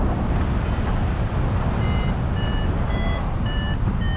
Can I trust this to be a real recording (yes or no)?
yes